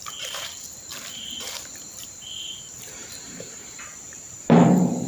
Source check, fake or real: fake